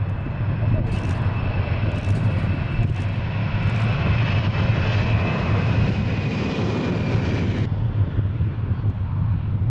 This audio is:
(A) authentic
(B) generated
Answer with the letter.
A